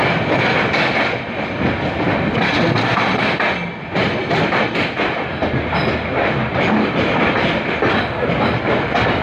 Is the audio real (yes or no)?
yes